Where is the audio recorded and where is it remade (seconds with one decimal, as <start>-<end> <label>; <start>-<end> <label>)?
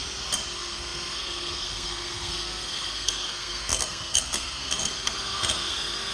0.0-0.5 recorded; 0.5-6.1 remade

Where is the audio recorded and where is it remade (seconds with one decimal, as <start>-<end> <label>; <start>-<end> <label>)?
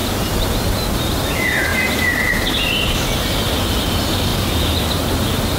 0.0-5.6 recorded